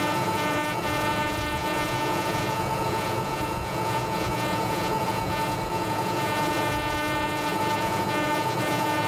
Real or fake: fake